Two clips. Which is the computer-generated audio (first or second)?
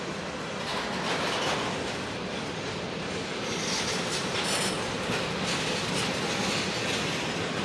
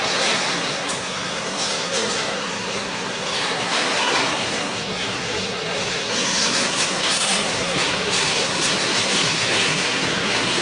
second